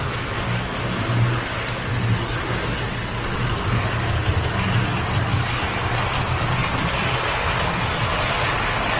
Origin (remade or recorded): recorded